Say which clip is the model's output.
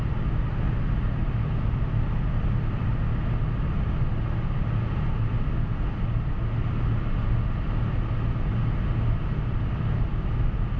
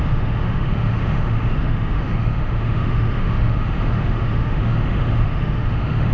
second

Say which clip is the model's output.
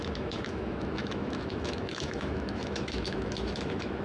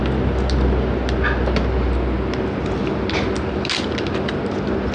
first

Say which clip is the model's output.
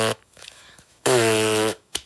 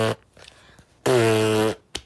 first